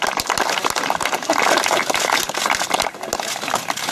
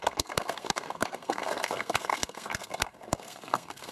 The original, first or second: first